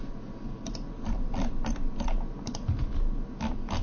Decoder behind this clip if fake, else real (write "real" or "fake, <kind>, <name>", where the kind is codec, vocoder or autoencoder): real